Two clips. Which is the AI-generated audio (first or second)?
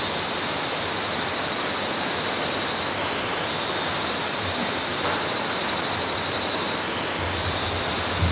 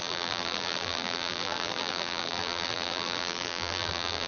second